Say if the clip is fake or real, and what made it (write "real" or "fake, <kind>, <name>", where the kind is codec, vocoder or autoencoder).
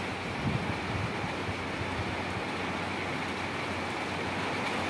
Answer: real